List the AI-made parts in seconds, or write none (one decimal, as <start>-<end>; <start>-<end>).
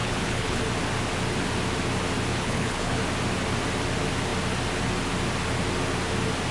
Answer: 0.0-0.6; 2.3-3.0